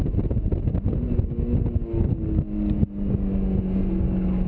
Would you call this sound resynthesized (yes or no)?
no